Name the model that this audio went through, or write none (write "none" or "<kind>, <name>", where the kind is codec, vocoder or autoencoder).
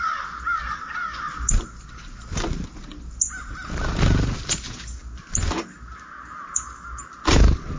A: none